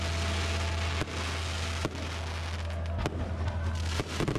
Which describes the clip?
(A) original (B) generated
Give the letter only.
A